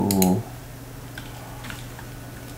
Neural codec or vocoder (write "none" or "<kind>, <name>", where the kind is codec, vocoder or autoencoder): none